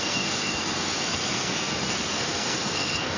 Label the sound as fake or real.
fake